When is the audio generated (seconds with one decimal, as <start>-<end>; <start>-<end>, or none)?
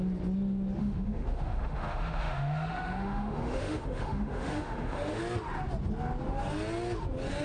0.8-5.2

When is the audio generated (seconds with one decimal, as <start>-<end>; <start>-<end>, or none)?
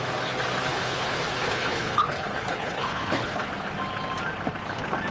0.7-3.5